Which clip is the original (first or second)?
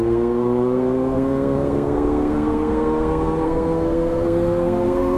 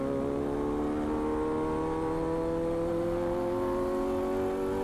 second